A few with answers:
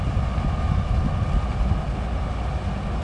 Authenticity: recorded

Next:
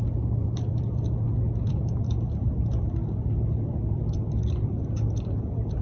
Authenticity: remade